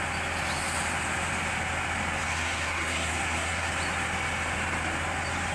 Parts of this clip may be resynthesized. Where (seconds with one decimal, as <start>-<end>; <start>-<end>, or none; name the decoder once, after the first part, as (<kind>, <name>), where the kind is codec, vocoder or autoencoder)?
2.3-3.7 (codec, SNAC)